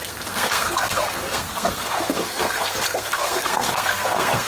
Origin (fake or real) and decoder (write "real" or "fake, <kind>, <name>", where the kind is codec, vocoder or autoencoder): fake, codec, SNAC